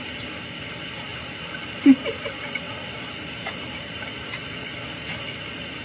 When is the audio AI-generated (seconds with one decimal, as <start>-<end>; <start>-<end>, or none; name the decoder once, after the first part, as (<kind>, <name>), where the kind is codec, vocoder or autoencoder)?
1.1-4.1 (vocoder, BigVGAN v2)